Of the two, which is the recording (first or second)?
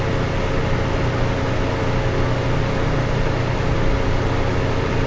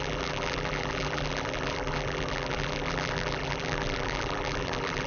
first